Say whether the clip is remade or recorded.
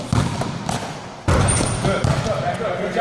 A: recorded